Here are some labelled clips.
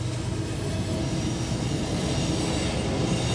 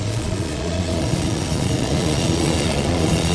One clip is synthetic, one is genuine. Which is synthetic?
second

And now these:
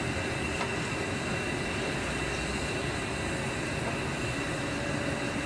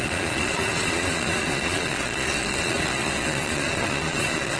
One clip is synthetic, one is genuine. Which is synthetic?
second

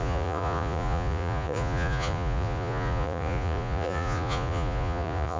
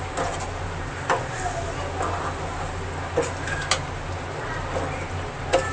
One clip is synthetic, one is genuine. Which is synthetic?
first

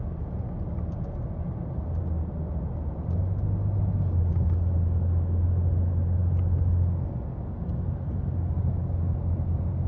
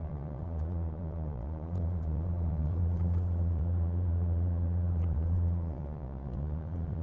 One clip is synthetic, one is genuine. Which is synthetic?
second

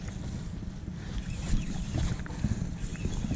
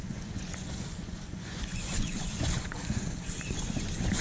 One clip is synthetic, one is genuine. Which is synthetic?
second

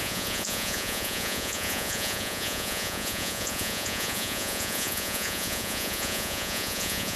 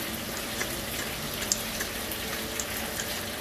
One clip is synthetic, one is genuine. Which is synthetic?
first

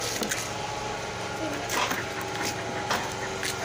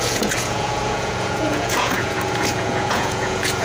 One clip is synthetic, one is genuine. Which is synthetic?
second